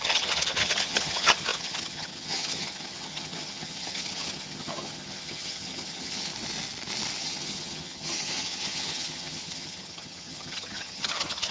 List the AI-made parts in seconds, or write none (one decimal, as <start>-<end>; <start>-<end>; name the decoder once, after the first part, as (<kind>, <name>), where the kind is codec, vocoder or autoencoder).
0.0-6.3 (vocoder, HiFi-GAN); 7.2-11.5